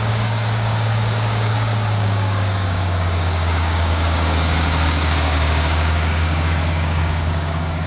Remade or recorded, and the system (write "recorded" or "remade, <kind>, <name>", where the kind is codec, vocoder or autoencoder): remade, codec, DAC